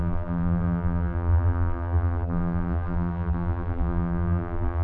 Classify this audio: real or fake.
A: fake